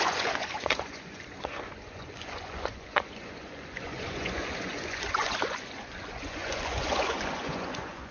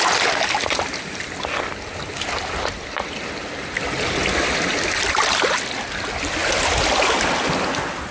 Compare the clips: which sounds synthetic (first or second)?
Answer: first